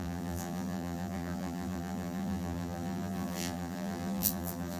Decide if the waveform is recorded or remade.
remade